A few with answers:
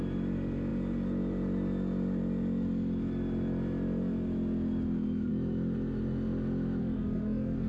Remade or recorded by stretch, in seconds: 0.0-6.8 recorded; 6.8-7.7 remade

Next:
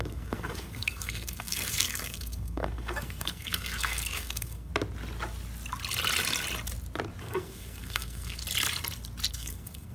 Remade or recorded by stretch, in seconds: 0.0-4.7 remade; 4.7-7.2 recorded; 7.2-8.4 remade; 8.4-9.3 recorded; 9.3-9.9 remade

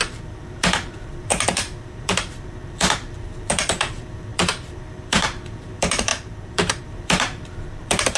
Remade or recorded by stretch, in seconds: 0.0-8.2 remade